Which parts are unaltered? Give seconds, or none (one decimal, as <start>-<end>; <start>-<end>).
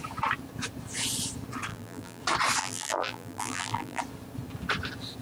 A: 0.0-1.7; 2.2-2.6; 4.0-5.2